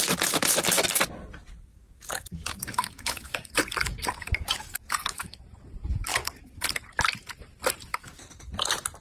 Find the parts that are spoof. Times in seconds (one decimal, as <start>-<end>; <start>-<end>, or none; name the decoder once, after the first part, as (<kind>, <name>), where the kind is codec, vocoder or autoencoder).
1.7-5.4 (codec, DAC); 6.1-6.7; 7.9-8.5